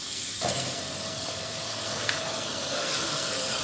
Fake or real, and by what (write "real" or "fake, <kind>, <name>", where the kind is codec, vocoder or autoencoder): fake, codec, SNAC